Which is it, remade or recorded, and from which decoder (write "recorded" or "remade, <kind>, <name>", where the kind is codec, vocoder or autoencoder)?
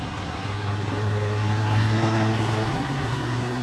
remade, codec, SNAC